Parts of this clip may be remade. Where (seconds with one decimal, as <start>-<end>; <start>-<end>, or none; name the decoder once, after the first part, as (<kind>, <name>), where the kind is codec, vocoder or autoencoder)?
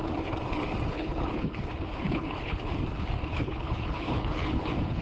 0.9-2.7 (codec, HILCodec); 3.3-5.0